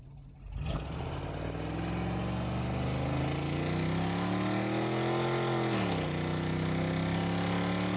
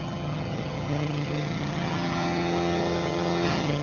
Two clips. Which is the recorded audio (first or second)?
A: first